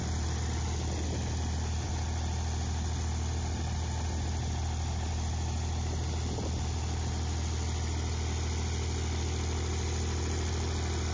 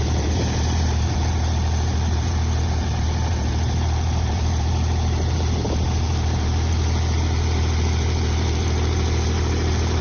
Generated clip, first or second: second